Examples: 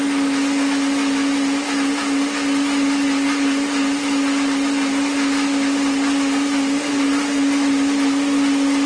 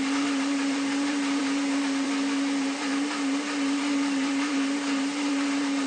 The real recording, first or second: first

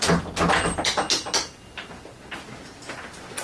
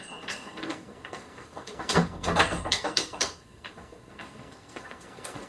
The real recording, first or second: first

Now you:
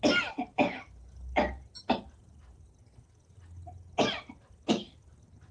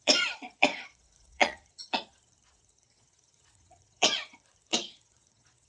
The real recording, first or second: first